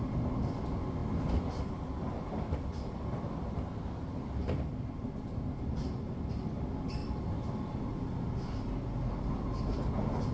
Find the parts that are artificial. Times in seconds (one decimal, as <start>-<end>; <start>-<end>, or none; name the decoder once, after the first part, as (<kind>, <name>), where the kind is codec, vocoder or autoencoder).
none